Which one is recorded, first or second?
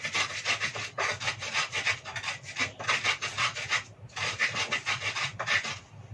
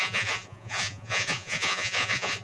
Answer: first